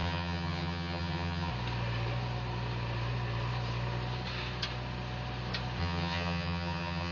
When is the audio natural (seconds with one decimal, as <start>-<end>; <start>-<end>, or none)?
1.5-5.8